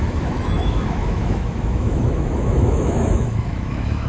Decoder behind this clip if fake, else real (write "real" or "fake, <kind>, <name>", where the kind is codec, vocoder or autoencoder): fake, autoencoder, DAC-VAE